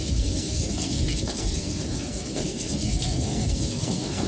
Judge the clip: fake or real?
fake